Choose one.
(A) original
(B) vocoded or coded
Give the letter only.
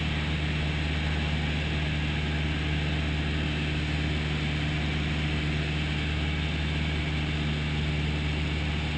A